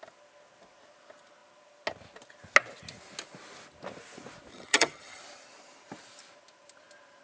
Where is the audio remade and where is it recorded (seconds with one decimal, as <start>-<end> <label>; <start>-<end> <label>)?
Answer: 0.0-4.5 recorded; 4.5-5.2 remade; 5.2-7.2 recorded